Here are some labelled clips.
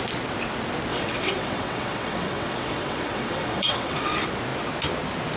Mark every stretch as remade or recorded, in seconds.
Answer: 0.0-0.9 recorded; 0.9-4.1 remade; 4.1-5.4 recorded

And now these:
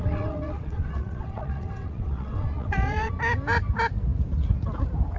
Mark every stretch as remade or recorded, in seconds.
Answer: 0.0-3.1 remade; 3.1-5.2 recorded

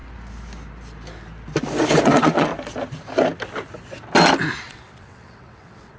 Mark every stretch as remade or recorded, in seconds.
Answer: 0.0-2.0 recorded; 2.0-2.5 remade; 2.5-4.6 recorded; 4.6-6.0 remade